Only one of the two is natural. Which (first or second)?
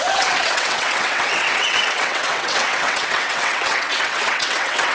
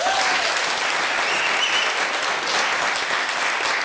second